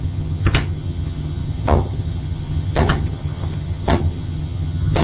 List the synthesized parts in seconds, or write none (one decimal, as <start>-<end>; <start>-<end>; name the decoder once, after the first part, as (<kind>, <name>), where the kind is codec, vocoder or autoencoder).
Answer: 0.0-5.0 (vocoder, HiFi-GAN)